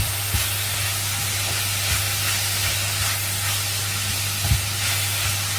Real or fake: real